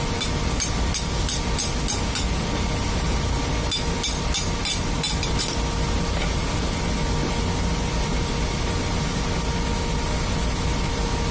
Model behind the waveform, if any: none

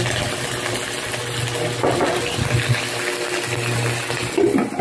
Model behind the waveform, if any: none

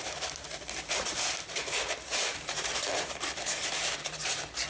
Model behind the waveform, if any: vocoder, BigVGAN v2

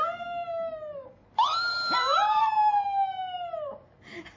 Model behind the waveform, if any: none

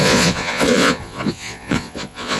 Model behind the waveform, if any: vocoder, Vocos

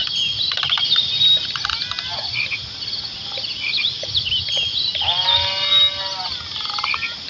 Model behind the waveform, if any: none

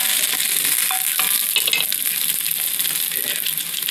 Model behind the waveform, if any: none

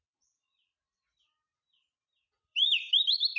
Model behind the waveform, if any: vocoder, BigVGAN v2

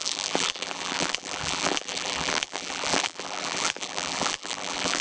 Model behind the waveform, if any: vocoder, BigVGAN v2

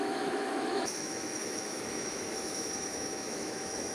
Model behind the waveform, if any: autoencoder, DAC-VAE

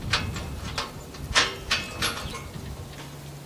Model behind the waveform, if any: none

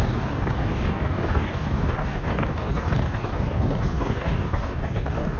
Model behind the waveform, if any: codec, DAC